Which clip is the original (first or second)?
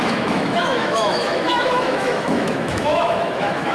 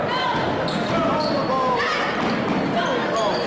second